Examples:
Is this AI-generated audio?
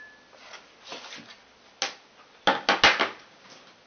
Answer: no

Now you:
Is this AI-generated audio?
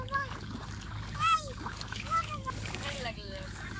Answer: yes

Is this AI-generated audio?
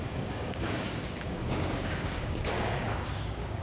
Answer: yes